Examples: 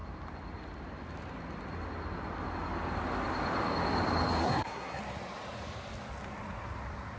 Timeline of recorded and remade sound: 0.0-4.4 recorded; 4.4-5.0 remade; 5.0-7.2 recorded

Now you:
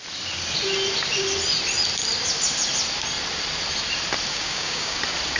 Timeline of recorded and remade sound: 0.0-4.3 recorded; 4.3-5.0 remade; 5.0-5.4 recorded

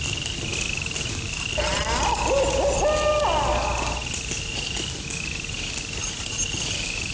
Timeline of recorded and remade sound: 0.0-7.1 recorded

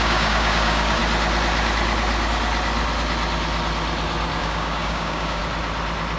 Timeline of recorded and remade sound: 0.0-1.0 remade; 1.0-4.4 recorded; 4.4-5.4 remade; 5.4-6.2 recorded

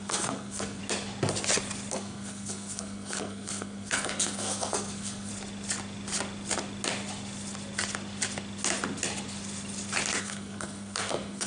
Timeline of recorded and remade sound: 0.0-0.8 remade; 0.8-1.9 recorded; 1.9-5.3 remade; 5.3-10.2 recorded; 10.2-11.5 remade